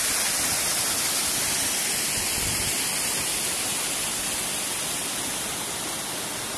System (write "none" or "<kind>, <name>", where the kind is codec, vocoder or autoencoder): none